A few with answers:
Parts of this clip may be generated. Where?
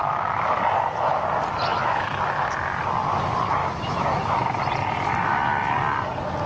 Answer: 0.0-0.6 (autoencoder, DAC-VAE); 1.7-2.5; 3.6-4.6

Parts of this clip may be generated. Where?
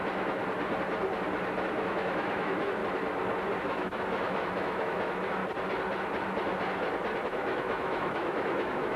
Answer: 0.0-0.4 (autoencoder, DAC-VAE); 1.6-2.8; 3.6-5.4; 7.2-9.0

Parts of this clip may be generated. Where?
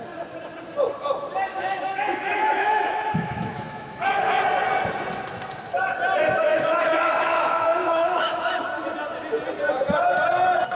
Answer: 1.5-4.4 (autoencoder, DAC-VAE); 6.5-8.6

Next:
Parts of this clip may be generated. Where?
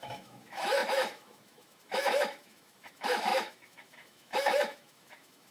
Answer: 0.0-5.5 (autoencoder, DAC-VAE)